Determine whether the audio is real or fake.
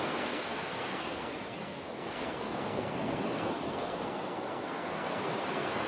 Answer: fake